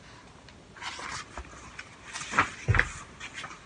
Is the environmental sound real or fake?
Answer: real